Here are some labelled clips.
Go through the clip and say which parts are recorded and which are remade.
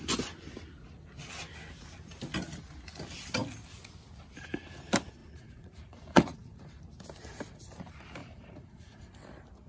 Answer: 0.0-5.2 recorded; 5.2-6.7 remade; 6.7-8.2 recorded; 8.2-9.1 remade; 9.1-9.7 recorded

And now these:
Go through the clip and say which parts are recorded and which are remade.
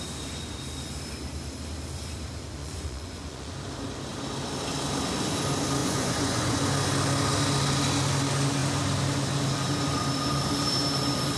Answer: 0.0-2.6 recorded; 2.6-3.5 remade; 3.5-5.8 recorded; 5.8-6.6 remade; 6.6-11.4 recorded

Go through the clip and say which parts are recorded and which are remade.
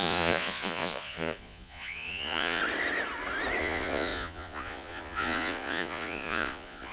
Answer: 0.0-2.6 remade; 2.6-3.6 recorded; 3.6-6.9 remade